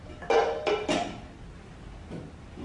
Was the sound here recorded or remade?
recorded